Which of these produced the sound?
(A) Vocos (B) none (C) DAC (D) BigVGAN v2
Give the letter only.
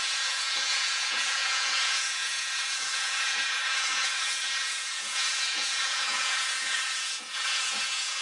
A